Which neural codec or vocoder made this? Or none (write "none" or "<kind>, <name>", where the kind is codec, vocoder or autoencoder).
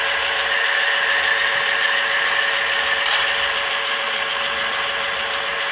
vocoder, BigVGAN v2